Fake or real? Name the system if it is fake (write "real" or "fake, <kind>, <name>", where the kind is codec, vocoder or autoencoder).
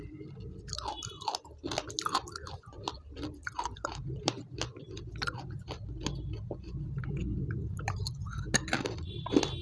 real